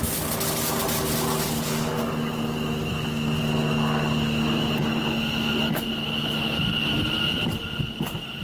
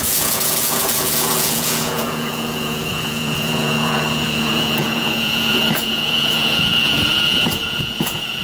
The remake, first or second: second